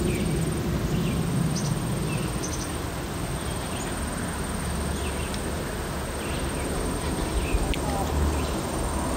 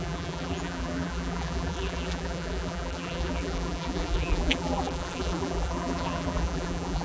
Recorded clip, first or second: first